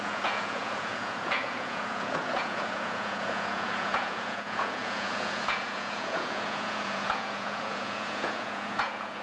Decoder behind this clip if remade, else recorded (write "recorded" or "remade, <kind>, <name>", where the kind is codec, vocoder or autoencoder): remade, vocoder, Vocos